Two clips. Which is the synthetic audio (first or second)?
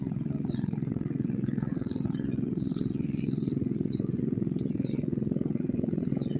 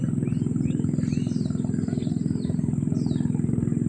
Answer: first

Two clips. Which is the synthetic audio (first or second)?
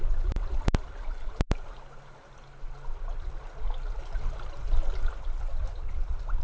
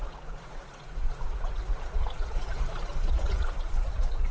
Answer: second